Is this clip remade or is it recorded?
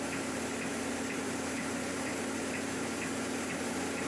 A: remade